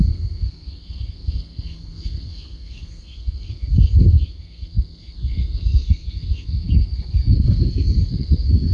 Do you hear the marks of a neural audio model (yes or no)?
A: yes